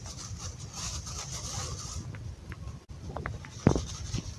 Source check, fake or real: real